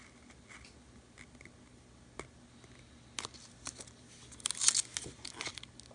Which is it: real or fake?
real